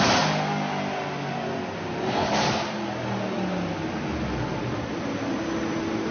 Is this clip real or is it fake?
real